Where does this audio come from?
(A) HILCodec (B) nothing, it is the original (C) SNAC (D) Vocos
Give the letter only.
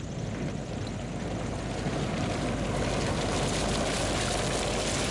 B